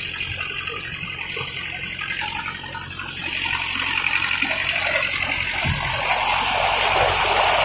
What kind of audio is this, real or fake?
real